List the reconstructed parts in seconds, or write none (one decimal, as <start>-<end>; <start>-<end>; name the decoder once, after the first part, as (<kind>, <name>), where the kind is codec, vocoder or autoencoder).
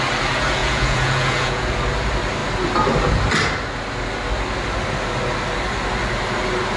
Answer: 0.6-1.7 (vocoder, Vocos)